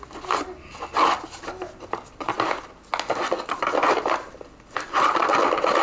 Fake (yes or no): no